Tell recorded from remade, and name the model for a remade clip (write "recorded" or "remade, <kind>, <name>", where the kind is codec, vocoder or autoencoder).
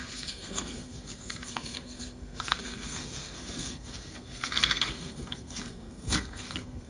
remade, codec, SNAC